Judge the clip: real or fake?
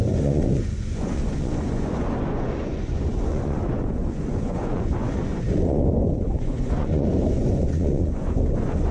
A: fake